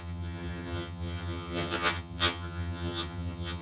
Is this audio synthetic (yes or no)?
yes